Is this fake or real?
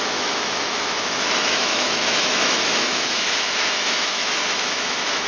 fake